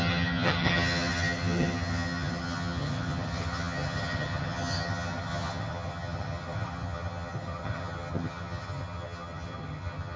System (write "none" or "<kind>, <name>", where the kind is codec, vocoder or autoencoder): vocoder, HiFi-GAN